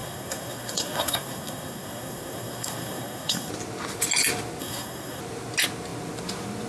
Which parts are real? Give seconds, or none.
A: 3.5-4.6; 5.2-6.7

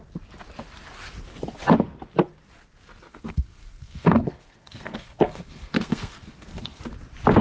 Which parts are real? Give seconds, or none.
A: 0.0-3.1; 6.8-7.4

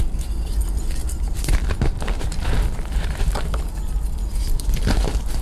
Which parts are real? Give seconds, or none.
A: 0.0-5.4

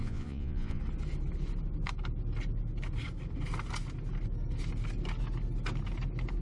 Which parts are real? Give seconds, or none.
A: 0.8-6.4

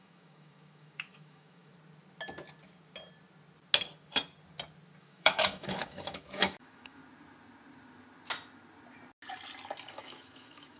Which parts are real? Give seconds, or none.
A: 1.7-5.0; 7.0-9.9